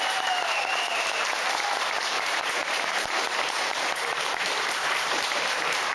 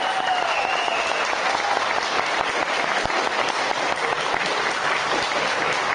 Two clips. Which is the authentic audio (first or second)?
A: second